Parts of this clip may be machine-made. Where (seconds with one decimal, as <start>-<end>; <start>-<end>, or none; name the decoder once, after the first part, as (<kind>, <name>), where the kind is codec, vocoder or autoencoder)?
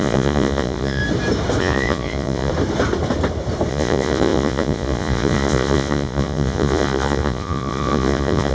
0.0-1.0 (vocoder, Vocos); 1.6-2.5; 3.7-8.5